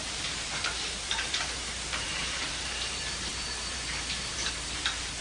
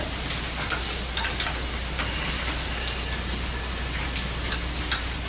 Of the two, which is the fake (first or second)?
first